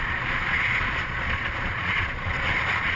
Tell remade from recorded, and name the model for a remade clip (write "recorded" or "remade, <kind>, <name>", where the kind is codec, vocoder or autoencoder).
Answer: remade, vocoder, Vocos